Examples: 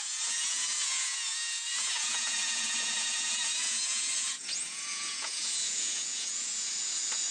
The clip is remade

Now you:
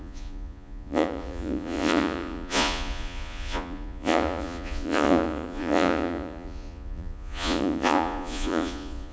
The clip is remade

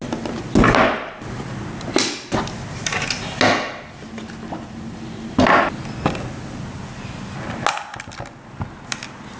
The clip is recorded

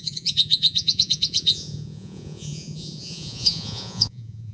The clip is remade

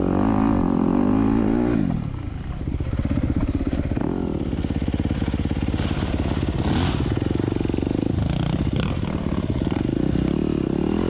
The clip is recorded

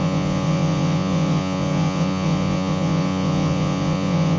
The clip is remade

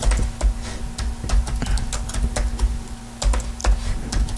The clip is recorded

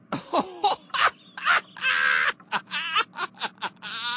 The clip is recorded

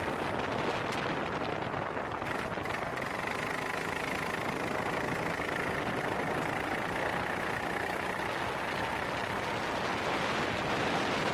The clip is recorded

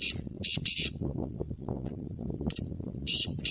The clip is remade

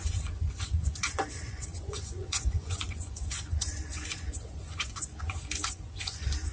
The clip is remade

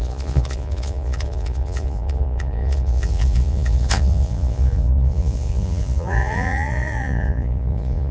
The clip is remade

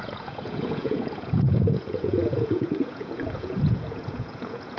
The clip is remade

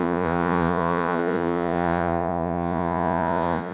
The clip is remade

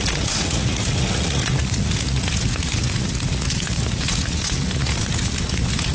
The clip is remade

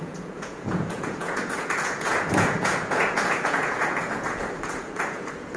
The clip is remade